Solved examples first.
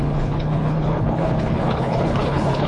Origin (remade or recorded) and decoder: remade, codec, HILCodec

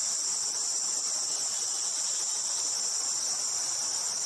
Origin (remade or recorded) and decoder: recorded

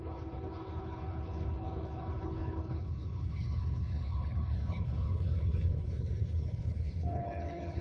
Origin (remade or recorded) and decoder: remade, codec, HILCodec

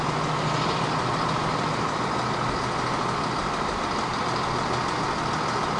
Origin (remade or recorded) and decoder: recorded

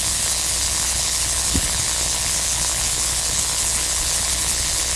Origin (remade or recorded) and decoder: remade, codec, HILCodec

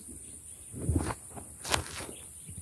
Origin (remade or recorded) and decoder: recorded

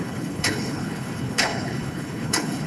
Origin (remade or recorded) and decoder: remade, codec, HILCodec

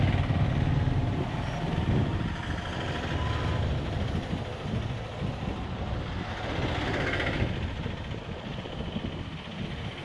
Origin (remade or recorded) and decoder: recorded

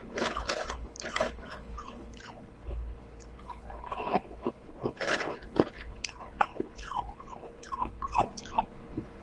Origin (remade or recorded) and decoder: remade, codec, HILCodec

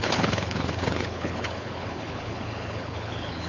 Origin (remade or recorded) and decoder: remade, codec, HILCodec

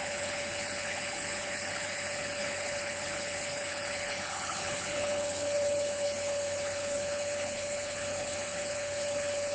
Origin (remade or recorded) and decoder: remade, codec, HILCodec